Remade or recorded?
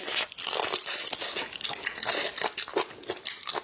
recorded